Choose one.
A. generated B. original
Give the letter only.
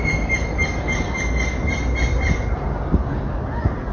B